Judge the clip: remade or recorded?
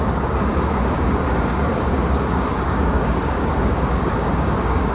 remade